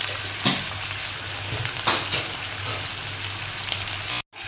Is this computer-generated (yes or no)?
no